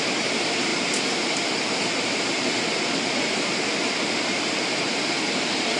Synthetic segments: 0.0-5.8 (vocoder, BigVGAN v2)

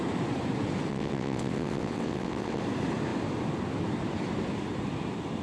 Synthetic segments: 0.9-2.6 (vocoder, WaveNeXt)

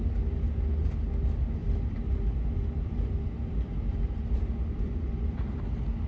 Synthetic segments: 1.6-5.1 (vocoder, BigVGAN v2)

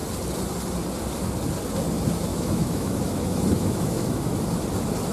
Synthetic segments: 2.3-4.4 (autoencoder, DAC-VAE)

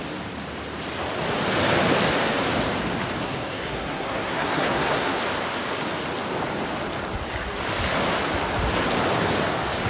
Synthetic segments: 3.2-5.2 (codec, SNAC)